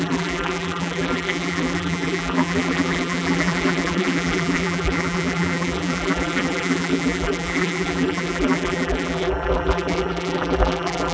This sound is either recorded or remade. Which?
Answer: remade